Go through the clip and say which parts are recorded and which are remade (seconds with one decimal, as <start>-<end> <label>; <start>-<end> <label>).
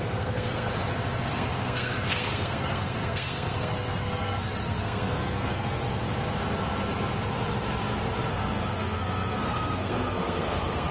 0.0-0.7 remade; 0.7-1.3 recorded; 1.3-5.8 remade; 5.8-8.3 recorded; 8.3-10.9 remade